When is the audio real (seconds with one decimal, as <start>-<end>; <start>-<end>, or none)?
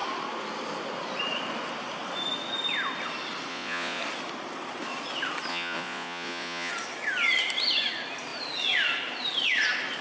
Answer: 0.0-3.5; 4.0-5.5; 6.7-10.0